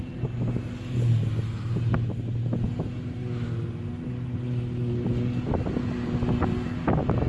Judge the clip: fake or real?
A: real